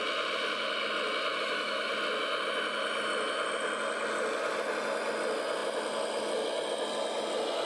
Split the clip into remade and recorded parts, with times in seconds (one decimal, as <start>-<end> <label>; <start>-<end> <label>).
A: 0.0-1.3 recorded; 1.3-1.9 remade; 1.9-7.7 recorded